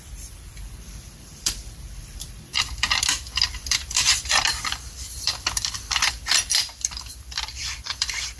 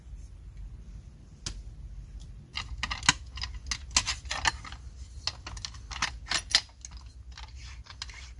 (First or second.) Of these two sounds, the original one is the second